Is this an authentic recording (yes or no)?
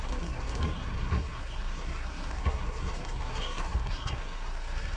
no